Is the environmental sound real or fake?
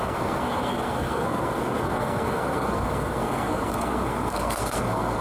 fake